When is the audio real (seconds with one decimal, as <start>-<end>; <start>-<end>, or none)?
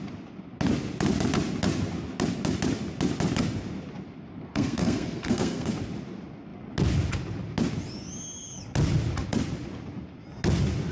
0.0-4.5; 5.7-10.9